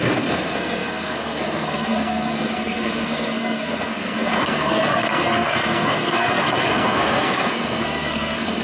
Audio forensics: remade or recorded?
remade